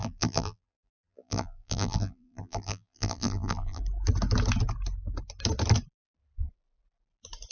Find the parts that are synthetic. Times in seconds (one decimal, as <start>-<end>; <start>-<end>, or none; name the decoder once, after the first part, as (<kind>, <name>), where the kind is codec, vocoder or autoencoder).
0.0-3.8 (vocoder, BigVGAN v2)